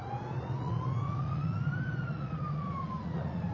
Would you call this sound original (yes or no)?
no